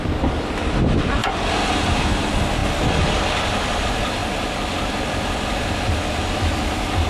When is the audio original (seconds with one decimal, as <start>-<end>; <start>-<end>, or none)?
0.0-7.1